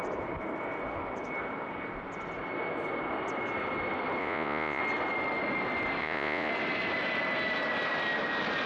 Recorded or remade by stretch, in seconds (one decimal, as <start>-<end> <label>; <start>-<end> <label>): 0.0-4.2 recorded; 4.2-4.8 remade; 4.8-6.0 recorded; 6.0-6.5 remade; 6.5-8.7 recorded